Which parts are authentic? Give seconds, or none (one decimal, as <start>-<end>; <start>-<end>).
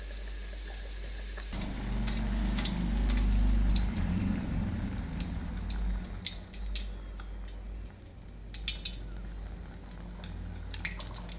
0.0-3.7; 5.5-11.4